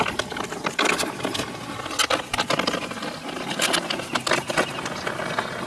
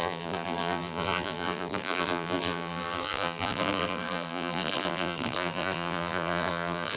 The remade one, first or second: second